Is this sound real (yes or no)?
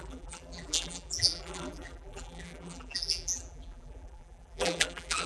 no